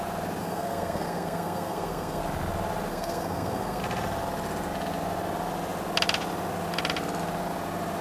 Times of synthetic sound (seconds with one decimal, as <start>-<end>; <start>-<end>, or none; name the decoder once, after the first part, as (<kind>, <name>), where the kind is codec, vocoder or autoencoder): 0.4-2.2 (codec, SNAC); 2.9-3.8